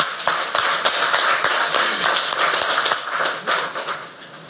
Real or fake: real